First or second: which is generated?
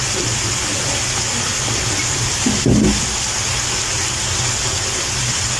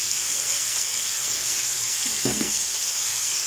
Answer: second